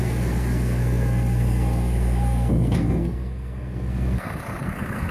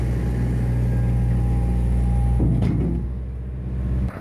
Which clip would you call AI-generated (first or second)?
first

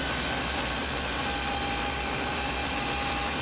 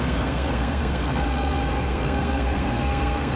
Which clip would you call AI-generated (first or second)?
second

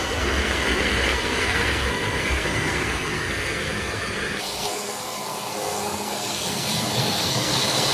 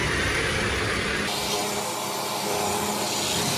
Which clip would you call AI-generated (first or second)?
first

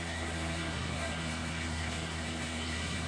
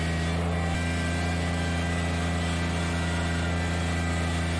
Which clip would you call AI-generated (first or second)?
first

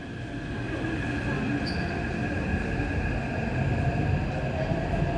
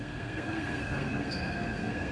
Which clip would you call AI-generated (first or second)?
second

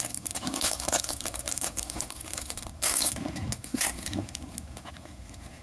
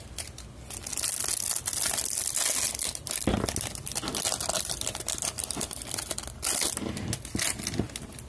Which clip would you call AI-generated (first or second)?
first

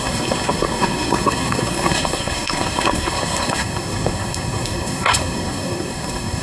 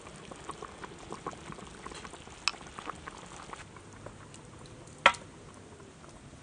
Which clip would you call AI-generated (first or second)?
first